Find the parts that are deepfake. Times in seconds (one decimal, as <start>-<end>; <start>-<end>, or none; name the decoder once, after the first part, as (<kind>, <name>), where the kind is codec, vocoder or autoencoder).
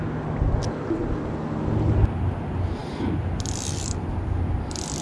none